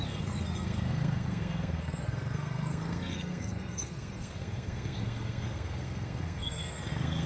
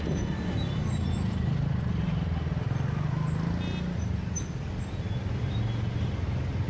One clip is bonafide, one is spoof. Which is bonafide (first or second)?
second